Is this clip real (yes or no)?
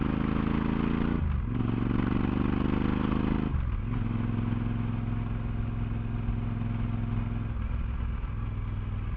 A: yes